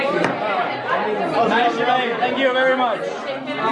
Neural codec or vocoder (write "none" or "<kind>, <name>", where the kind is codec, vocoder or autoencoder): none